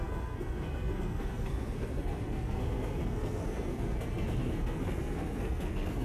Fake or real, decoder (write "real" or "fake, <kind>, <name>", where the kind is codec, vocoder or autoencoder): fake, codec, SNAC